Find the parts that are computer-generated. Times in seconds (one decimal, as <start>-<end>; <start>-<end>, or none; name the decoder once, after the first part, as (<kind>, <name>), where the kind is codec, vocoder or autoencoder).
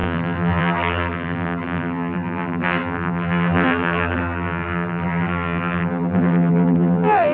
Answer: 0.0-7.3 (vocoder, BigVGAN v2)